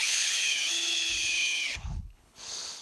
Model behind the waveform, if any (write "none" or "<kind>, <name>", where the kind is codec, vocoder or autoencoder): codec, HILCodec